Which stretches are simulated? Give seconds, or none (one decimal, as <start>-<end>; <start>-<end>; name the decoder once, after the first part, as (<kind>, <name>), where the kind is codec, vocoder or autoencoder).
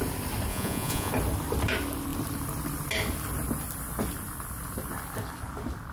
0.5-1.1 (vocoder, Vocos)